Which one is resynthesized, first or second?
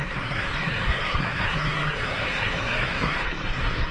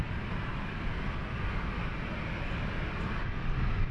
first